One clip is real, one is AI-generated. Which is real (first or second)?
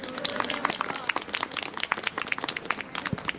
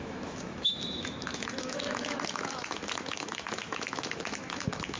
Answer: first